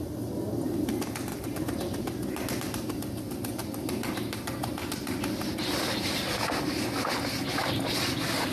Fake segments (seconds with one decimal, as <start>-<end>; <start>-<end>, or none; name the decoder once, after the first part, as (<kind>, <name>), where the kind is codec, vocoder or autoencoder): 1.3-3.0 (vocoder, BigVGAN v2); 3.6-4.7